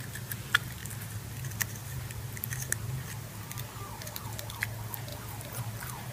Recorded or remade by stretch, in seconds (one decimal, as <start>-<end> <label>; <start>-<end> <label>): 0.0-6.1 recorded